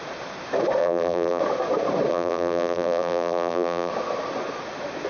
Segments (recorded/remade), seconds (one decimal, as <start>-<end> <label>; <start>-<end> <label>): 0.0-0.8 recorded; 0.8-1.4 remade; 1.4-2.1 recorded; 2.1-3.9 remade; 3.9-5.1 recorded